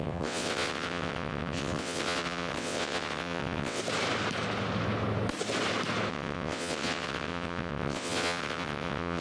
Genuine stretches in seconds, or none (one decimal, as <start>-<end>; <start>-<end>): 3.8-6.1